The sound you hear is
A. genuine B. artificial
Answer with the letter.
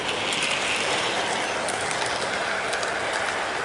A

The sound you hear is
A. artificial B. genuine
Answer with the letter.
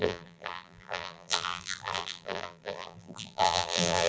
A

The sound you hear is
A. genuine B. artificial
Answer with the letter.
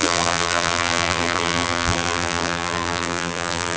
B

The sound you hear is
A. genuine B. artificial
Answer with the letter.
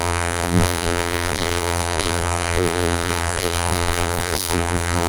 B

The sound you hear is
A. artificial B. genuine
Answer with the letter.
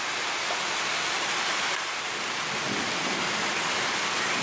B